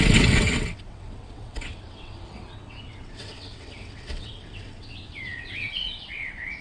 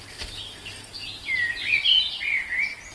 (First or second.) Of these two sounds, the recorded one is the second